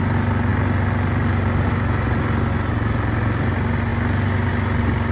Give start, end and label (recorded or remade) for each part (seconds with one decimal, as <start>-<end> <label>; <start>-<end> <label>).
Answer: 0.0-5.1 recorded